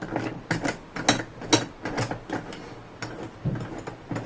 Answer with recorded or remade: recorded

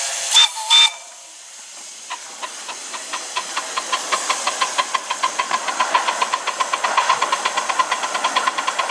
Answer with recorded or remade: recorded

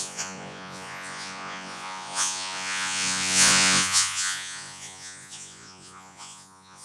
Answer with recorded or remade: remade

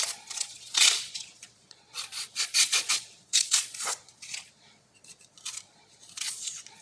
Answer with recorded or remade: remade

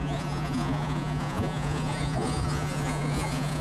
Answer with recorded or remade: remade